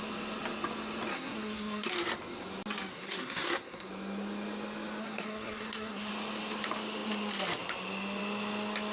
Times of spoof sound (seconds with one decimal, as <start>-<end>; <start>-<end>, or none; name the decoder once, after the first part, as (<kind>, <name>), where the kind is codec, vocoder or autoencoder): 1.1-1.9 (codec, SNAC); 2.9-3.9; 5.0-6.1